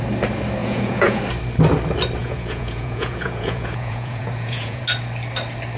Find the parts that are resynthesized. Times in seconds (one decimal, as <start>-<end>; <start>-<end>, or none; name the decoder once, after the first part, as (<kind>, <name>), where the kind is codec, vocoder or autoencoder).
0.6-1.2 (vocoder, Vocos); 2.2-4.8